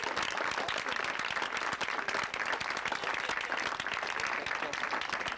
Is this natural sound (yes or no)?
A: yes